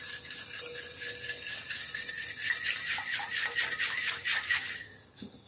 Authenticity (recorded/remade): recorded